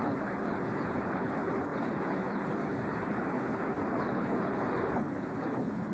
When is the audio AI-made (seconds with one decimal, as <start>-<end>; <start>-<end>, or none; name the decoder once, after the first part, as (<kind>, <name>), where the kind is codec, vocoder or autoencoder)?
0.0-5.9 (codec, HILCodec)